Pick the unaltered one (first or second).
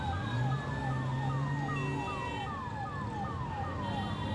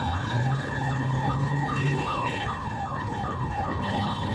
first